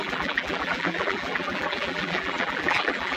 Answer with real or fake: fake